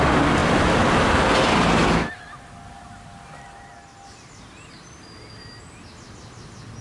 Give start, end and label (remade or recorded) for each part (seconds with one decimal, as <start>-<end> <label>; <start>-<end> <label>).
0.0-0.4 recorded; 0.4-2.2 remade; 2.2-6.8 recorded